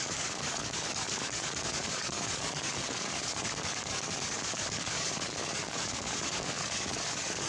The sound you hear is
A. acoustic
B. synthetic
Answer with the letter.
B